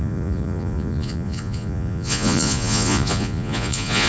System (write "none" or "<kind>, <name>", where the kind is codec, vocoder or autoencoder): vocoder, Vocos